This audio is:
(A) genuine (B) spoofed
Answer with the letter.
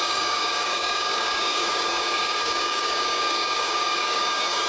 B